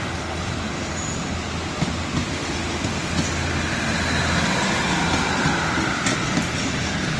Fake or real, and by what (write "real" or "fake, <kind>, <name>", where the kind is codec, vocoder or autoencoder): real